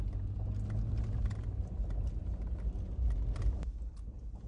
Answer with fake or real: real